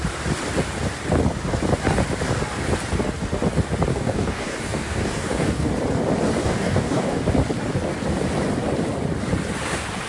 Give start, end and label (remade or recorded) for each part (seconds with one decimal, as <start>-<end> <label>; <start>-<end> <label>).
0.0-3.9 recorded; 3.9-5.7 remade; 5.7-6.4 recorded; 6.4-7.2 remade; 7.2-10.1 recorded